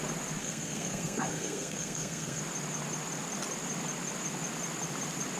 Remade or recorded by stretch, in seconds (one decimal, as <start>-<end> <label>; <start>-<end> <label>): 0.0-0.4 recorded; 0.4-2.4 remade; 2.4-5.4 recorded